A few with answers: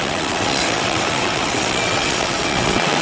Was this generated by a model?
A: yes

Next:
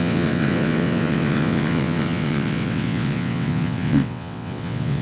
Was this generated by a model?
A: yes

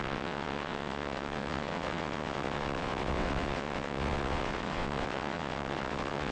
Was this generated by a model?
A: yes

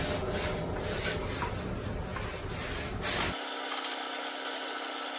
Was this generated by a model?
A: no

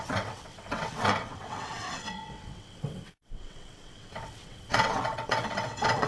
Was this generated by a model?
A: yes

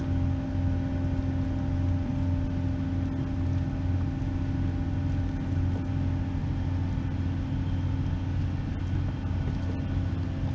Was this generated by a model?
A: no